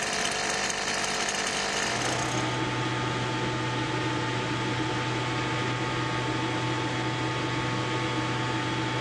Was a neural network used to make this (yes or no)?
no